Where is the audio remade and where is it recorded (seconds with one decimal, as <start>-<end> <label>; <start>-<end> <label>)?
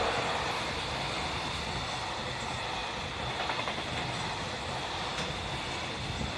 0.0-6.4 recorded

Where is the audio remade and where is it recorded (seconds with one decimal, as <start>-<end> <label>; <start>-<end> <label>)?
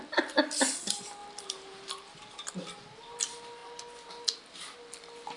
0.0-3.6 remade; 3.6-4.8 recorded; 4.8-5.4 remade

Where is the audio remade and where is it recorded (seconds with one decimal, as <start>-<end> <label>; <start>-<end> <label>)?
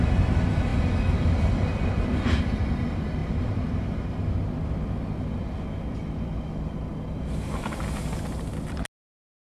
0.0-3.2 recorded; 3.2-4.2 remade; 4.2-6.9 recorded; 6.9-7.8 remade; 7.8-9.4 recorded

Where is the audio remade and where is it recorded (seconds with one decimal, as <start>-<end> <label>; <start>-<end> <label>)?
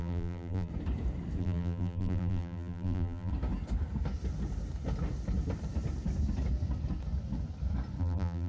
0.0-0.7 remade; 0.7-1.4 recorded; 1.4-3.3 remade; 3.3-8.0 recorded; 8.0-8.5 remade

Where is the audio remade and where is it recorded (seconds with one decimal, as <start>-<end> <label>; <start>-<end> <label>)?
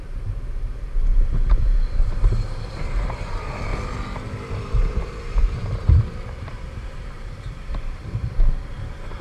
0.0-3.7 remade; 3.7-4.8 recorded; 4.8-9.2 remade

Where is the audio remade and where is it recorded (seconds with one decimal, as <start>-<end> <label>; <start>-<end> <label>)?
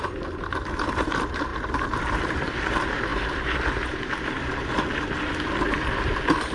0.0-6.5 remade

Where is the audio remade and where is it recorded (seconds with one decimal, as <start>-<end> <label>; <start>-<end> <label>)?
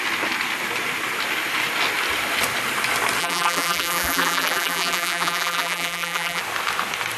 0.0-3.2 recorded; 3.2-6.4 remade; 6.4-7.2 recorded